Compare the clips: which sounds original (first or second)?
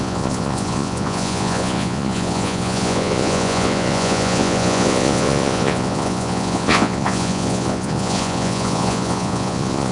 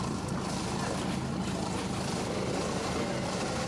second